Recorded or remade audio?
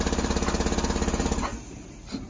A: recorded